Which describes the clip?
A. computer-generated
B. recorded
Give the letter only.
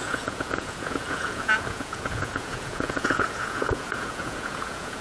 A